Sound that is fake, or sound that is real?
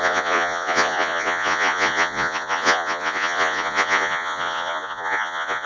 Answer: fake